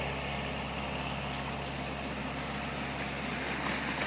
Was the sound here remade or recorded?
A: recorded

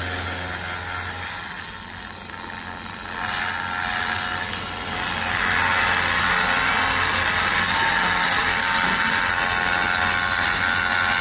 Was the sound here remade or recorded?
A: recorded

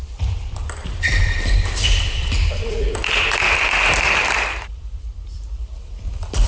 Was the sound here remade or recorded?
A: remade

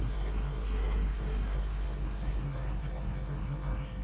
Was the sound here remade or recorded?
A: remade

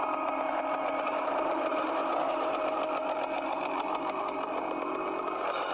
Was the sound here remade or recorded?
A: remade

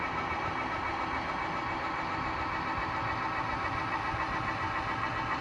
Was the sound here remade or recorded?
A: recorded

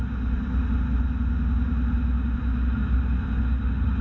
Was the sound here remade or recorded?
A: recorded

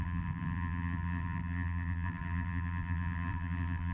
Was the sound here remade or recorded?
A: remade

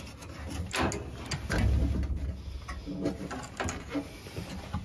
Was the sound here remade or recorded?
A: recorded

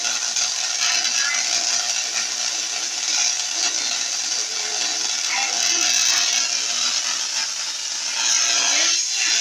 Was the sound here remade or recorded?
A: recorded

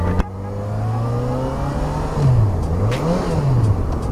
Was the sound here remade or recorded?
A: recorded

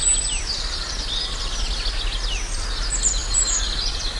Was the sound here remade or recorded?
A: recorded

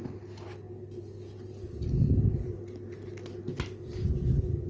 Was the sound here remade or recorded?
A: recorded